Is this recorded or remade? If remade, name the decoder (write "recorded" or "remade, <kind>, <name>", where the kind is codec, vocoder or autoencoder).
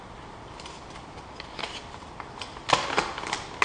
recorded